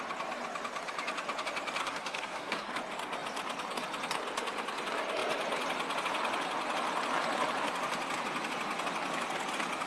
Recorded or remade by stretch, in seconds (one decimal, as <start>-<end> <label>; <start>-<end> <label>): 0.0-1.8 recorded; 1.8-2.7 remade; 2.7-9.9 recorded